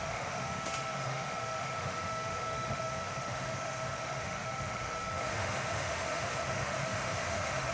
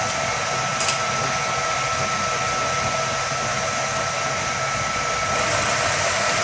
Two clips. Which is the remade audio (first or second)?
first